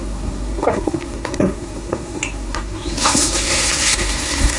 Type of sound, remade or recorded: remade